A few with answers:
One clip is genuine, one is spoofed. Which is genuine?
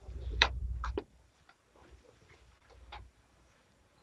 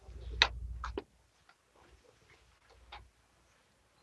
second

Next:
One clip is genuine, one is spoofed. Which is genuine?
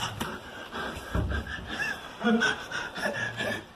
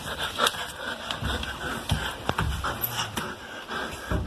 second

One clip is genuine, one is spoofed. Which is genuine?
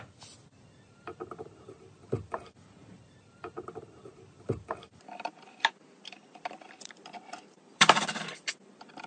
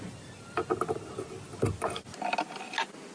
second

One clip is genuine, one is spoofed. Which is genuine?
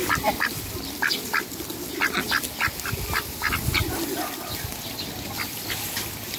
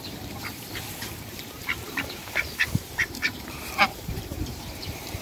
first